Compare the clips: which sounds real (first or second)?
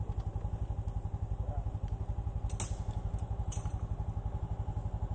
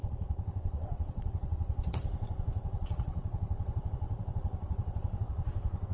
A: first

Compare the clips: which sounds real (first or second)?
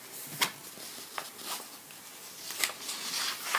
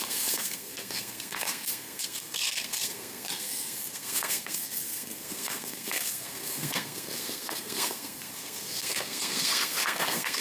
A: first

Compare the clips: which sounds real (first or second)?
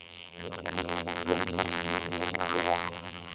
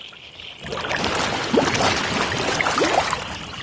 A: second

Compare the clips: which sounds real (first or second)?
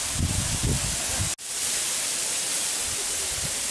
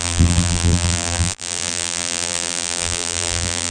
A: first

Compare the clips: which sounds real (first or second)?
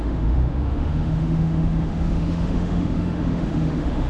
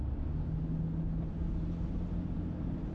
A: second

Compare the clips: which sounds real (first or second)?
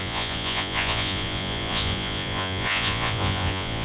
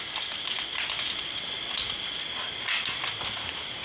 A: second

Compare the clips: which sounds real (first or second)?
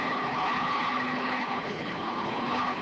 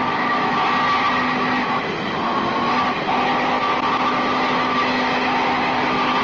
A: second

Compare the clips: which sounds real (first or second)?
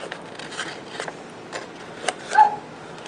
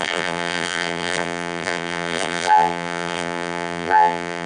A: first